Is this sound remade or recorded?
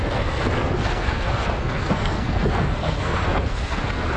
remade